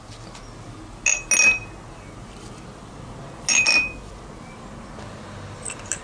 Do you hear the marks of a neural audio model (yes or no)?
no